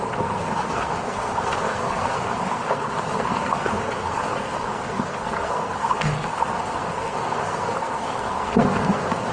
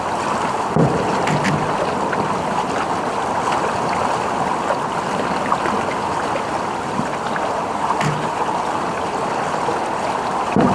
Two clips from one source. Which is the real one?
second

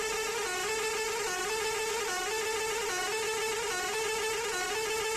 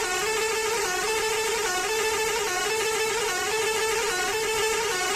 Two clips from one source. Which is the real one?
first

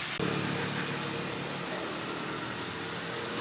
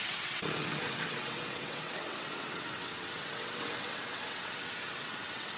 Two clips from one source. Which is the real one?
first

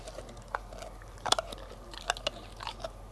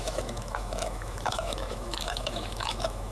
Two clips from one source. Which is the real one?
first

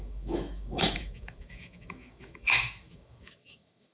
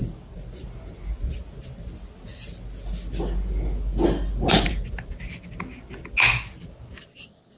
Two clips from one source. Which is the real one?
second